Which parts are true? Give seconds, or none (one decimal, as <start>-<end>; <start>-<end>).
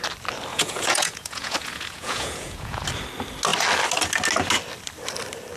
0.0-0.5; 2.8-5.6